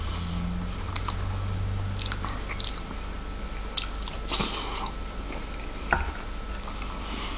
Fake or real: real